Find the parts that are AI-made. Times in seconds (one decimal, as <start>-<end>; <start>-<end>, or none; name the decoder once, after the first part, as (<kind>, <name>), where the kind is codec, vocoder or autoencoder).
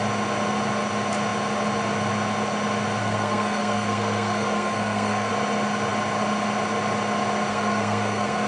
3.0-5.3 (codec, SNAC); 7.5-8.5